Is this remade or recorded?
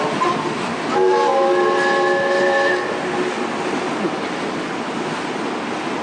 recorded